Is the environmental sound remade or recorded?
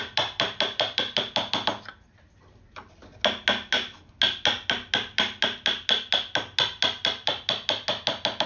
recorded